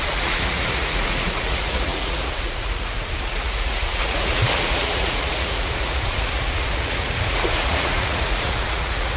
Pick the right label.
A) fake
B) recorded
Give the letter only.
A